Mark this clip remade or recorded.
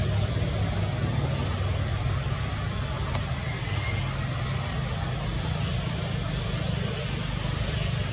recorded